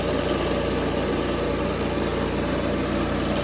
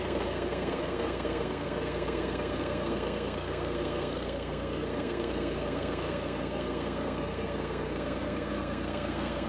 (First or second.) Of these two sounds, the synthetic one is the second